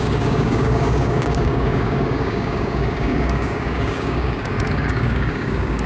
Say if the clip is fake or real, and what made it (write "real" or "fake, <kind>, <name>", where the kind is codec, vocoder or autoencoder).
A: fake, codec, DAC